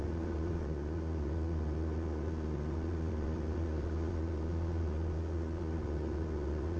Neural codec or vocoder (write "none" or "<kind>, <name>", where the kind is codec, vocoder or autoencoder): vocoder, Vocos